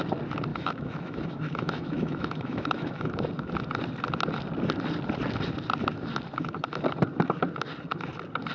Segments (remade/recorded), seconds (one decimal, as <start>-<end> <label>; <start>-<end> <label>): 0.0-0.5 recorded; 0.5-3.1 remade; 3.1-8.5 recorded